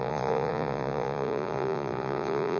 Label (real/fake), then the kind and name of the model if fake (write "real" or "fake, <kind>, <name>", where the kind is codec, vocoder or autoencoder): fake, vocoder, Vocos